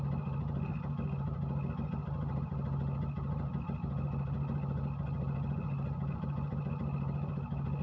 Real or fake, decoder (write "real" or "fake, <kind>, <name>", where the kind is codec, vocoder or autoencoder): real